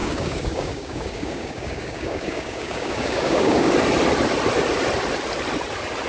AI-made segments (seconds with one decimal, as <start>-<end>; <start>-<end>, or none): 0.0-3.7